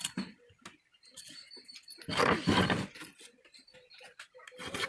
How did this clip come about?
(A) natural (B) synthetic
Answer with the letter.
A